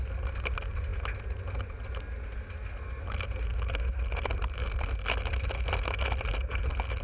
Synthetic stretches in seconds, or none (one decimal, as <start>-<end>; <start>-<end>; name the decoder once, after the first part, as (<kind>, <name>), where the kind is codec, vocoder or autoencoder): none